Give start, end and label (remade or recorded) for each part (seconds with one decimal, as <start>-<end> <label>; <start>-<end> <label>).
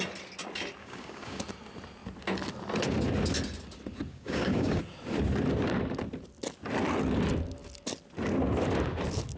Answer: 0.0-0.8 recorded; 0.8-1.4 remade; 1.4-4.1 recorded; 4.1-4.8 remade; 4.8-9.4 recorded